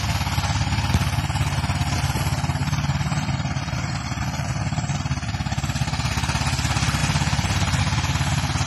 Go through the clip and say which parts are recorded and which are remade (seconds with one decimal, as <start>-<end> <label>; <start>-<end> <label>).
0.0-2.6 recorded; 2.6-5.0 remade; 5.0-7.0 recorded; 7.0-7.8 remade; 7.8-8.7 recorded